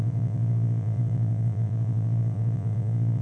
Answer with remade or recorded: remade